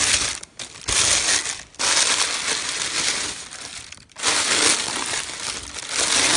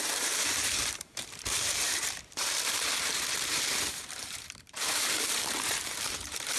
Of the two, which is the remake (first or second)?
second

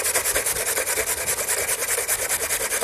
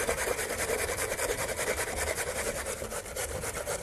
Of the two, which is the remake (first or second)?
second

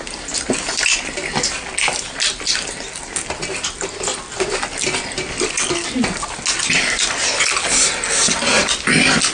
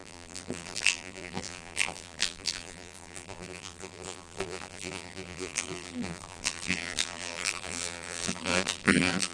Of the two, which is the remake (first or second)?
second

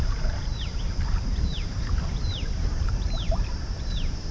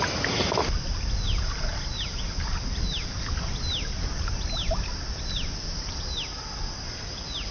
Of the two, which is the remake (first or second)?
first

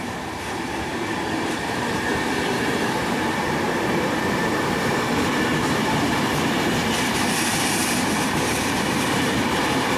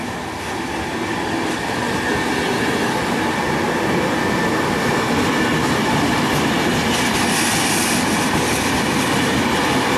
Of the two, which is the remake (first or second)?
first